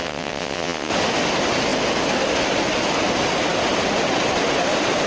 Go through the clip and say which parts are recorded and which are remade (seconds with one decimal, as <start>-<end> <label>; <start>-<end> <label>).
0.0-0.9 remade; 0.9-5.1 recorded